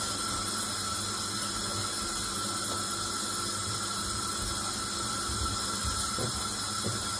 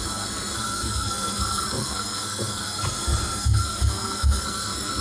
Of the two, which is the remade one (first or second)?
second